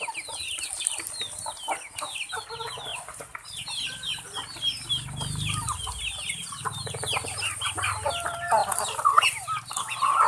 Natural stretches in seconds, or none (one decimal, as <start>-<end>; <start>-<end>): 0.0-2.9; 3.6-8.6